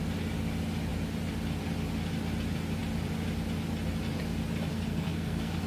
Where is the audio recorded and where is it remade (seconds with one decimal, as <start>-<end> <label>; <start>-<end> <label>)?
0.0-4.7 recorded; 4.7-5.7 remade